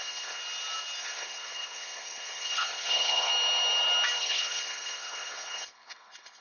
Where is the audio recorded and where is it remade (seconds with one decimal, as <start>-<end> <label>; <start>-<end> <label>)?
0.0-0.4 remade; 0.4-1.0 recorded; 1.0-3.3 remade; 3.3-4.2 recorded; 4.2-6.4 remade